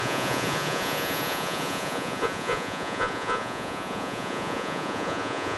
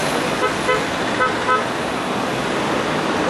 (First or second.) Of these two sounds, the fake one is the first